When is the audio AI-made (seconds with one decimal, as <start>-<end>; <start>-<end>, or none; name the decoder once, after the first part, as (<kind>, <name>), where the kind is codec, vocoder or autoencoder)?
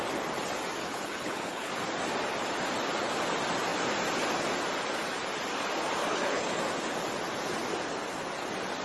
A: 0.8-1.7 (codec, HILCodec); 6.0-6.6